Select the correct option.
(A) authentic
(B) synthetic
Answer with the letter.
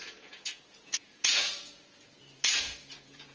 B